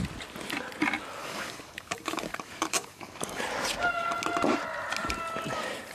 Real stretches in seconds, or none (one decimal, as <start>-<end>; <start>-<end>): 0.0-1.2; 3.4-5.9